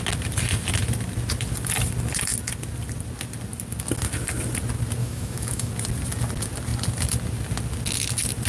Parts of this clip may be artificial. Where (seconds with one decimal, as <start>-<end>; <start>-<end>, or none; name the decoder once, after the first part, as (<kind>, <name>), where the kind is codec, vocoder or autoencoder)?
5.0-5.7 (autoencoder, DAC-VAE)